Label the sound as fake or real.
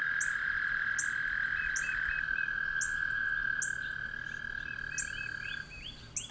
real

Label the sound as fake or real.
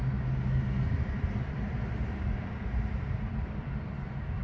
fake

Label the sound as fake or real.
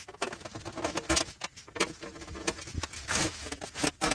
real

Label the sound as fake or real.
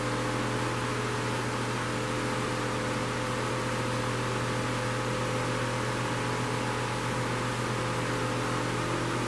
real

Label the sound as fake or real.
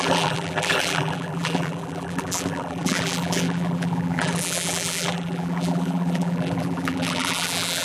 fake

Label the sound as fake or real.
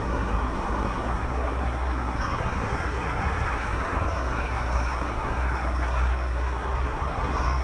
fake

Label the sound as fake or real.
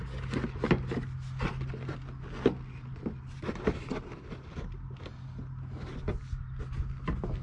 real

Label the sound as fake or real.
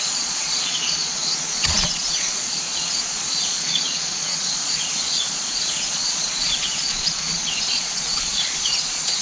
fake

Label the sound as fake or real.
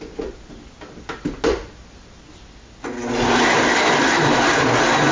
real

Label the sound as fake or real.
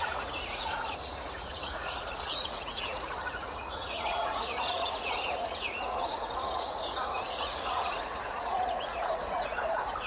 fake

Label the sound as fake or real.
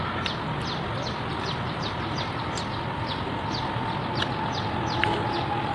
real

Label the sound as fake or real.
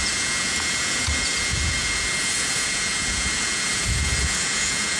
fake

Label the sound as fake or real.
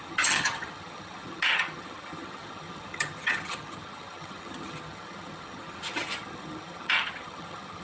fake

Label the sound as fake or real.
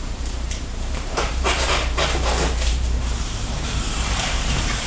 fake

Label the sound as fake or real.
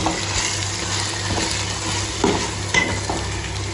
real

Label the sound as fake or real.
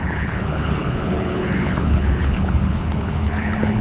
fake